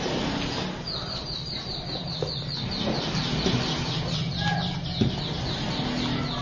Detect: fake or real real